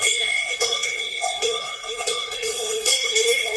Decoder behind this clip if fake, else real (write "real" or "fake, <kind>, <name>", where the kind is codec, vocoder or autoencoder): fake, codec, SNAC